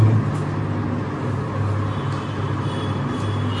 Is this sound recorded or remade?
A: recorded